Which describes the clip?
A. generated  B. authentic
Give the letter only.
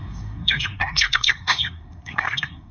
A